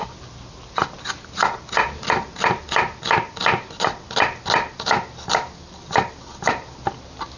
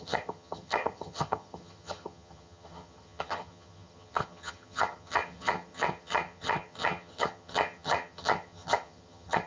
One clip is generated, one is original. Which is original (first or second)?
first